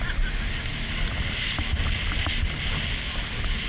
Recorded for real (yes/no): yes